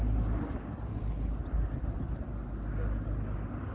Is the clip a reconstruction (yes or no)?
no